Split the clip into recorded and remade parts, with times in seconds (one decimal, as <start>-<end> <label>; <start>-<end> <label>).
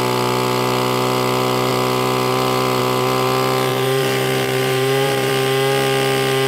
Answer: 0.0-3.7 recorded; 3.7-5.3 remade; 5.3-6.5 recorded